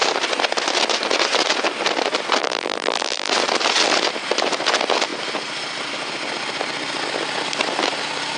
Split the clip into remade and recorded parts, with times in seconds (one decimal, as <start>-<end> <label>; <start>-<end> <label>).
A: 0.0-2.4 recorded; 2.4-3.3 remade; 3.3-8.4 recorded